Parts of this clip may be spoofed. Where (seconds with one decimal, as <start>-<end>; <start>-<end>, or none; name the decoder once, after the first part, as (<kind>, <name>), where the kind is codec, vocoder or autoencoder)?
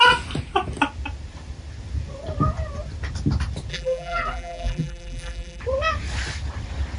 3.7-5.6 (vocoder, BigVGAN v2)